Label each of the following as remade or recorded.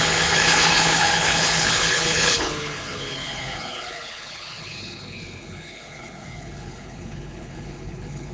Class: remade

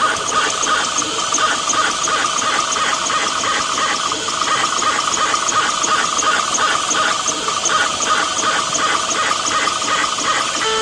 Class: recorded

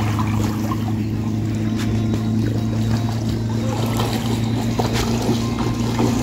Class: recorded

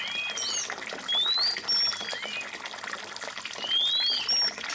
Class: recorded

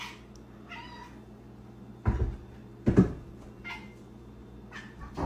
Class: recorded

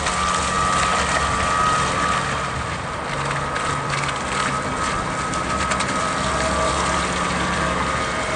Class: remade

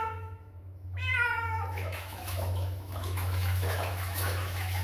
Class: remade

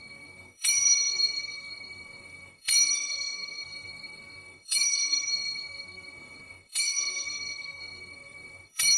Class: remade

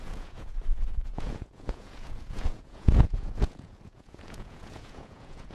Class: remade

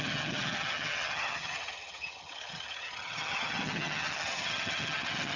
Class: remade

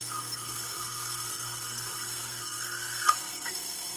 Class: remade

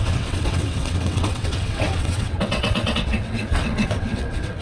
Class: remade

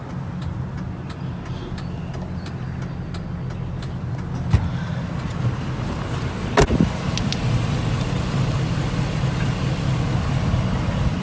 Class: recorded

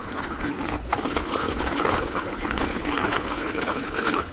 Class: remade